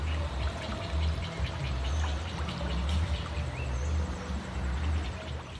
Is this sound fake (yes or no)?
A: no